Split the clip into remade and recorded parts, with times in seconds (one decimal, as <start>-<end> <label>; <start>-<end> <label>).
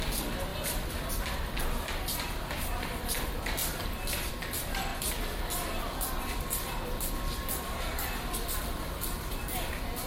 0.0-0.5 recorded; 0.5-1.1 remade; 1.1-3.6 recorded; 3.6-4.3 remade; 4.3-10.1 recorded